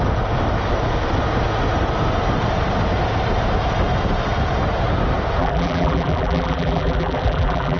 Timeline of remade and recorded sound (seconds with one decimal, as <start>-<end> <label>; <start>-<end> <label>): 0.0-5.4 recorded; 5.4-7.8 remade